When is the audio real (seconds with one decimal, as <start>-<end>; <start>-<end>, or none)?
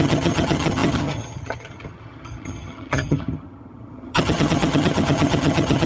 none